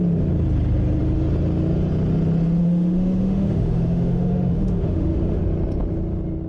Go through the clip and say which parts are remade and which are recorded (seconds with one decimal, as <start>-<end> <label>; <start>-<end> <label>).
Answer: 0.0-2.6 recorded; 2.6-5.4 remade; 5.4-6.5 recorded